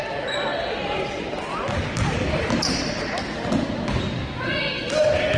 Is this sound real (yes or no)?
yes